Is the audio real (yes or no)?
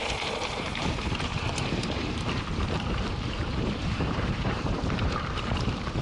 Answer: no